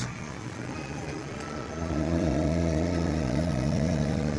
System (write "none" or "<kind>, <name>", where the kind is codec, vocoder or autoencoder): vocoder, Vocos